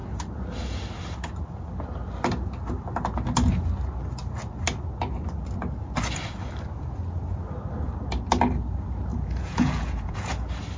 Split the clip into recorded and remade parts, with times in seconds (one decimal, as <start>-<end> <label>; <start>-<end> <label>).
0.0-9.1 recorded; 9.1-10.3 remade; 10.3-10.8 recorded